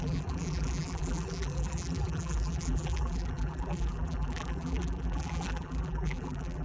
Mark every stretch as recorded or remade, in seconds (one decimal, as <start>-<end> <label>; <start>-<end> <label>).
0.0-6.6 remade